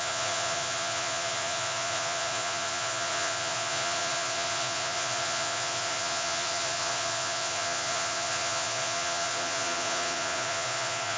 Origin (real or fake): fake